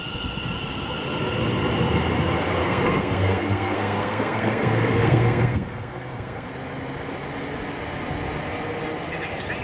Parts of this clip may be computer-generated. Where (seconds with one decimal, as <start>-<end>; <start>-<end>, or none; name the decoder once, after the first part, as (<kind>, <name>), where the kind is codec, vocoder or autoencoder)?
2.6-6.5 (codec, SNAC)